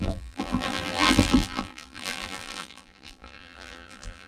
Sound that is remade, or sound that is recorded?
remade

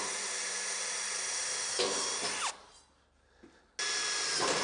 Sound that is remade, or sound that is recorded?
recorded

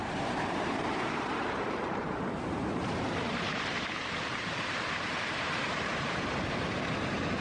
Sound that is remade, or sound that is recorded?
remade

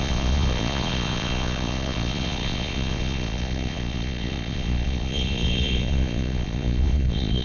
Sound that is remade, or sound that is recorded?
remade